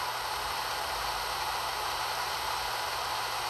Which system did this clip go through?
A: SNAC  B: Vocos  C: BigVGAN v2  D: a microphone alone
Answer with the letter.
C